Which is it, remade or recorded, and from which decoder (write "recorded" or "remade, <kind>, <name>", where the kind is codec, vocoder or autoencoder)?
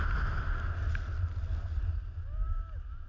recorded